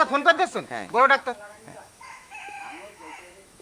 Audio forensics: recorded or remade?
remade